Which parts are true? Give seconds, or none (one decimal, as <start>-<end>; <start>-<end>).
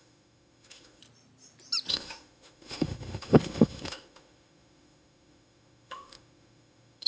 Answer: 1.0-1.9